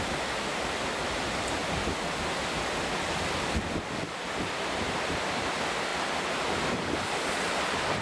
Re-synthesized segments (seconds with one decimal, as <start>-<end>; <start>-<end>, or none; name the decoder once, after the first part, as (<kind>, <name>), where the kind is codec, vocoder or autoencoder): none